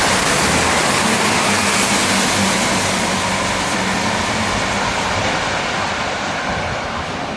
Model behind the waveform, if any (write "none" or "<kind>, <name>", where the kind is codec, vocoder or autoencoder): none